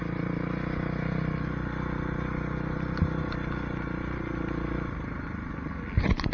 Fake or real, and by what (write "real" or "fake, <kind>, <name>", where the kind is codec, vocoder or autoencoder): real